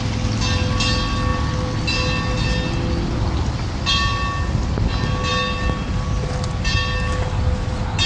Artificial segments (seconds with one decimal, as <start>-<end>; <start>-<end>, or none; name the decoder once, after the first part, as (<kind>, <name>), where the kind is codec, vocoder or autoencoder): none